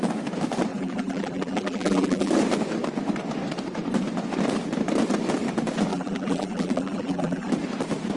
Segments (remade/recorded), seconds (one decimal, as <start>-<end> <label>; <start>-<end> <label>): 0.0-0.7 recorded; 0.7-2.3 remade; 2.3-5.9 recorded; 5.9-7.5 remade; 7.5-8.2 recorded